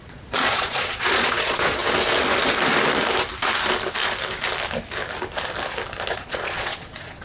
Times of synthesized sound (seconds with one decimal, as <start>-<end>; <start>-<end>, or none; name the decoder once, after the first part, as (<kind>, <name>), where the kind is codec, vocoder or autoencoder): 0.0-1.8 (vocoder, Vocos); 6.1-7.2